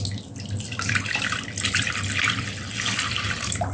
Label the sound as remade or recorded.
recorded